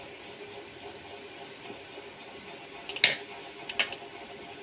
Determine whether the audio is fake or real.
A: real